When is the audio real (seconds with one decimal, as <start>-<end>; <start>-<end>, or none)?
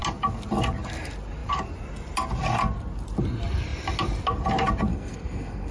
0.0-4.9